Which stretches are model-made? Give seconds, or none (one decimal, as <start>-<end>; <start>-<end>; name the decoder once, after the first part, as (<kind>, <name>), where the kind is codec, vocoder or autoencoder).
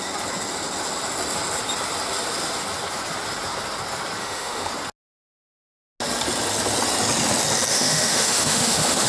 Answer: 4.2-4.7 (autoencoder, DAC-VAE); 7.7-9.1